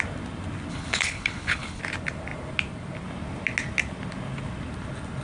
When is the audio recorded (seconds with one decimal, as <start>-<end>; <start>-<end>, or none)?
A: 0.0-0.7; 1.8-5.2